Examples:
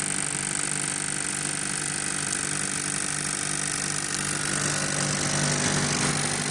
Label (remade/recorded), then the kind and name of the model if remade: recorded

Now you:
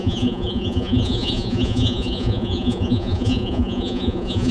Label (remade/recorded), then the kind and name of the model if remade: remade, vocoder, Vocos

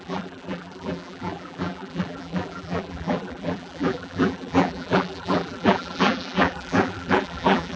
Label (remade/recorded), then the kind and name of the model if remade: remade, vocoder, BigVGAN v2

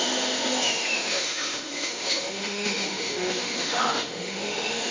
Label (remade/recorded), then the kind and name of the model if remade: remade, autoencoder, DAC-VAE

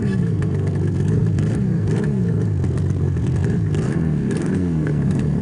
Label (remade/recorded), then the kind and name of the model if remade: remade, codec, SNAC